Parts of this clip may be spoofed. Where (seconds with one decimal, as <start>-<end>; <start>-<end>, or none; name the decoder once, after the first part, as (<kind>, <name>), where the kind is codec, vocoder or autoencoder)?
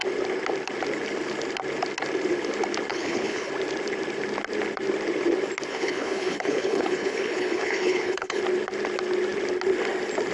2.9-3.5 (codec, HILCodec); 5.7-8.4